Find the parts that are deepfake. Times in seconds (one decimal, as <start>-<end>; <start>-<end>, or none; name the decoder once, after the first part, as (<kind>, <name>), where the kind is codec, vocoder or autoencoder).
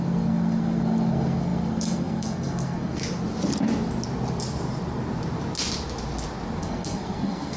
0.0-3.0 (codec, SNAC); 6.6-7.6